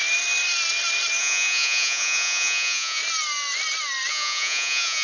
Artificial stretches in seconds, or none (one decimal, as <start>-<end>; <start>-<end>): 1.2-3.0; 4.1-5.0